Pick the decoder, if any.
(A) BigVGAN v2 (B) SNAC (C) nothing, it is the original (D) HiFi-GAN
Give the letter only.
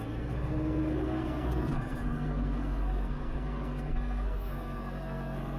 B